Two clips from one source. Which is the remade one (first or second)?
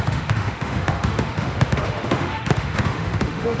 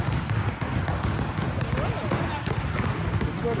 first